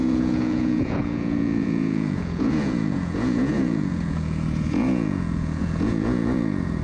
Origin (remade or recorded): remade